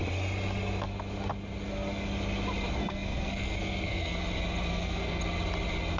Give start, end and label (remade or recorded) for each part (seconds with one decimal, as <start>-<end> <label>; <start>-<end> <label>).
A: 0.0-2.8 recorded; 2.8-4.2 remade; 4.2-4.7 recorded; 4.7-5.2 remade; 5.2-6.0 recorded